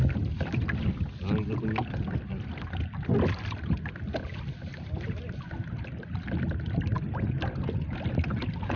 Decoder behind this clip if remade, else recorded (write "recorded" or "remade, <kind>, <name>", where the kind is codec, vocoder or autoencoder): recorded